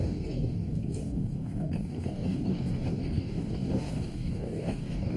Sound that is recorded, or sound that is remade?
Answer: remade